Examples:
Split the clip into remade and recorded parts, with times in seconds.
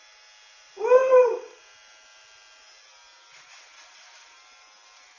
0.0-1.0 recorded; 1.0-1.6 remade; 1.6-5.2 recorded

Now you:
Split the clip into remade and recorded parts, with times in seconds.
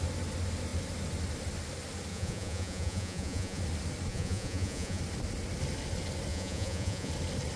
0.0-2.1 recorded; 2.1-3.6 remade; 3.6-4.1 recorded; 4.1-5.0 remade; 5.0-6.3 recorded; 6.3-7.1 remade; 7.1-7.6 recorded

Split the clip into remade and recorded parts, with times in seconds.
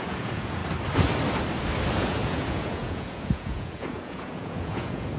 0.0-0.6 remade; 0.6-1.9 recorded; 1.9-5.2 remade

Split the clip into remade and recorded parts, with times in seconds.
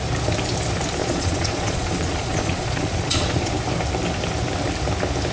0.0-1.0 recorded; 1.0-3.5 remade; 3.5-5.3 recorded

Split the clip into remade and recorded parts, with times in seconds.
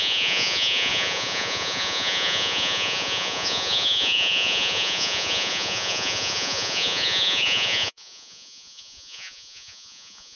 0.0-10.3 remade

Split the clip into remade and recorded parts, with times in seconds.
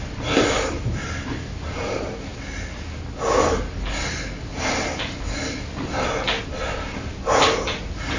0.0-8.2 recorded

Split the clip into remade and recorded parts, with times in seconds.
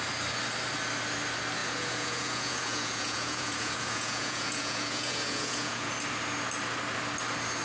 0.0-1.6 recorded; 1.6-5.9 remade; 5.9-7.6 recorded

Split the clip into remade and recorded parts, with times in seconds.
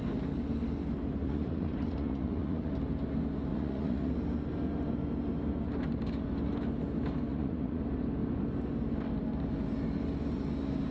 0.0-1.2 recorded; 1.2-2.7 remade; 2.7-3.5 recorded; 3.5-4.1 remade; 4.1-7.3 recorded; 7.3-7.8 remade; 7.8-10.9 recorded